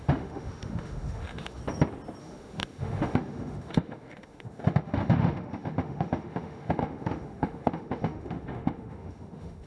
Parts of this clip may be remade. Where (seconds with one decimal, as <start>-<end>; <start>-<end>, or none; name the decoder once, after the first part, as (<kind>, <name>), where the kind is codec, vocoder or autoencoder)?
0.0-1.6 (autoencoder, DAC-VAE); 2.2-9.7